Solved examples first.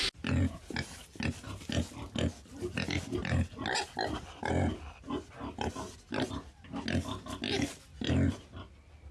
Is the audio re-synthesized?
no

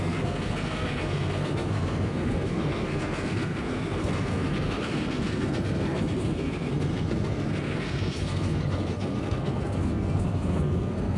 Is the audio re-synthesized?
yes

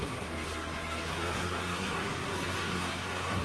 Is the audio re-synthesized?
yes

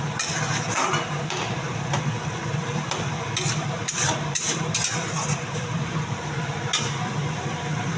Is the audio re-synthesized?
yes